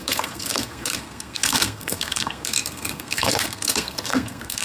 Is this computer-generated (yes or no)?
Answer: yes